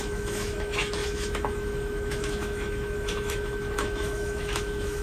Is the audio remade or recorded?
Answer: remade